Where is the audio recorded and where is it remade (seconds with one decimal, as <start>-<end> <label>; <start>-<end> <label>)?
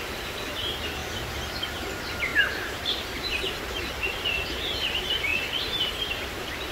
0.0-2.3 recorded; 2.3-3.5 remade; 3.5-5.3 recorded; 5.3-6.1 remade; 6.1-6.7 recorded